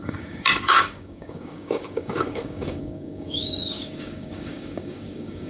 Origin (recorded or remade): remade